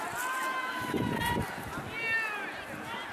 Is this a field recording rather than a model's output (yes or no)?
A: yes